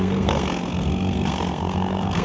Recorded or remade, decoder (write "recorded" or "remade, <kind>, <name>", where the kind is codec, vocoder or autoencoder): remade, codec, SNAC